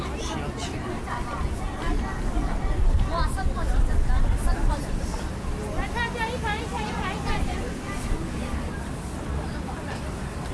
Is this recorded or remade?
recorded